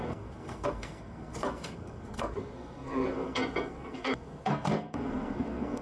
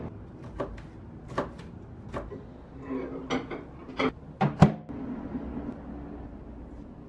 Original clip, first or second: second